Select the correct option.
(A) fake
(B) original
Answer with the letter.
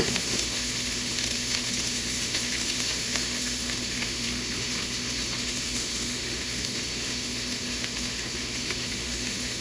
A